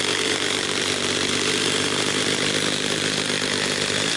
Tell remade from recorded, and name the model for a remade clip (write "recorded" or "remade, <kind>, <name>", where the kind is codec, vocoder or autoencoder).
remade, vocoder, BigVGAN v2